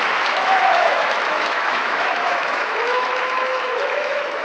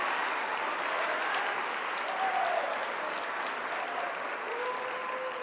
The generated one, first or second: first